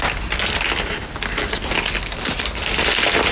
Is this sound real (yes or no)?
yes